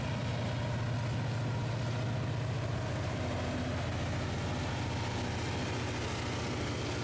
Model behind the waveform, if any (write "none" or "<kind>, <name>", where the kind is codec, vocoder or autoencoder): none